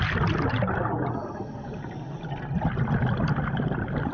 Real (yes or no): yes